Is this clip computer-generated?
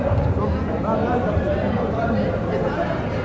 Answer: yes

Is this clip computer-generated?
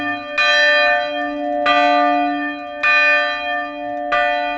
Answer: no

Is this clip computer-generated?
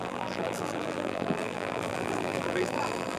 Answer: yes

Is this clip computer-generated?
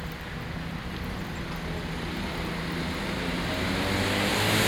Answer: no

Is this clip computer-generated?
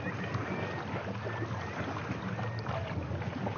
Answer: no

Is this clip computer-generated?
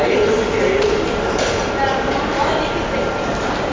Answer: no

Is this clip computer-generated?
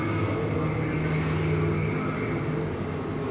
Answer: no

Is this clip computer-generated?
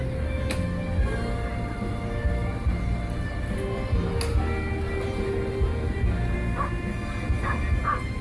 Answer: no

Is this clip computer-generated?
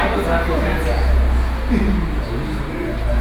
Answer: no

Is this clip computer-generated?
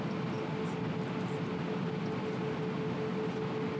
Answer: no